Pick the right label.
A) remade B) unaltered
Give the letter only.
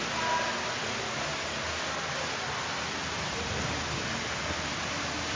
B